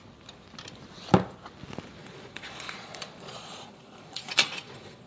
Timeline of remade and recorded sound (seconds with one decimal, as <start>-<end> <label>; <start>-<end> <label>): 0.0-2.0 recorded; 2.0-5.1 remade

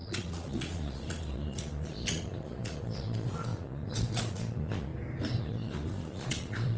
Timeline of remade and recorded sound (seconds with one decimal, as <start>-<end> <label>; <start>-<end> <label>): 0.0-4.9 remade; 4.9-5.4 recorded; 5.4-6.8 remade

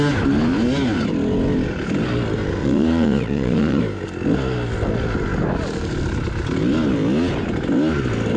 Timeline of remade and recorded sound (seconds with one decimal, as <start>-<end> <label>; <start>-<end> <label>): 0.0-2.6 recorded; 2.6-3.8 remade; 3.8-8.4 recorded

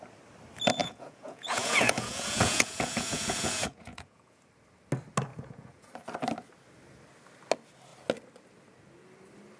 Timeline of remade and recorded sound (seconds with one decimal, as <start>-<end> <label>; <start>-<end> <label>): 0.0-0.8 recorded; 0.8-4.4 remade; 4.4-5.3 recorded; 5.3-5.9 remade; 5.9-9.6 recorded

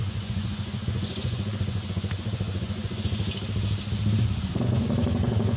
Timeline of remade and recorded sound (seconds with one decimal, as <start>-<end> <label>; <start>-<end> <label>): 0.0-3.2 remade; 3.2-4.2 recorded; 4.2-5.6 remade

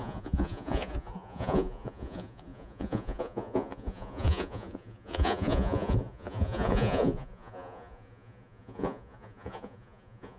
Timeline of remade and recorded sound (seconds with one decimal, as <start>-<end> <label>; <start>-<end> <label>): 0.0-10.4 remade

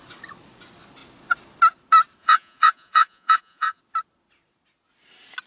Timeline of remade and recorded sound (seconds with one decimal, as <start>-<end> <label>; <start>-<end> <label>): 0.0-2.2 recorded; 2.2-3.8 remade; 3.8-5.5 recorded

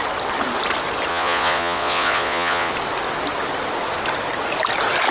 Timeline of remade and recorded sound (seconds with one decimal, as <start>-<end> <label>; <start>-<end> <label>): 0.0-1.1 recorded; 1.1-2.7 remade; 2.7-5.1 recorded